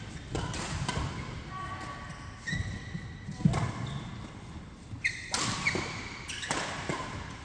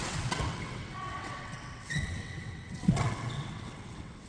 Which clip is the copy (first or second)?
second